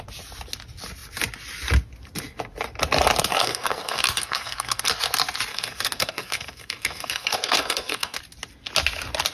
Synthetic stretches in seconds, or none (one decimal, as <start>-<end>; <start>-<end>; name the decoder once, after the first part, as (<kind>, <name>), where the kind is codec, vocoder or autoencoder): 3.3-4.9 (codec, SNAC); 5.5-8.2